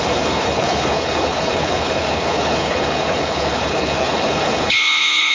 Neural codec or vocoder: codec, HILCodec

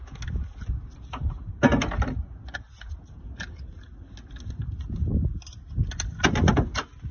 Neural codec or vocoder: none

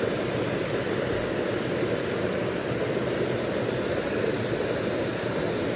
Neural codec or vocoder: none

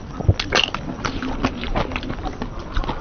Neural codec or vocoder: none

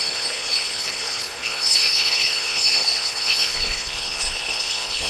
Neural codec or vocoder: codec, HILCodec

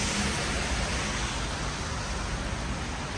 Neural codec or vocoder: none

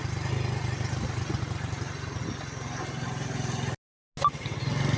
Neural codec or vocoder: none